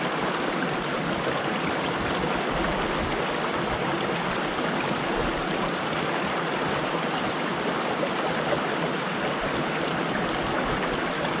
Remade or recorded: recorded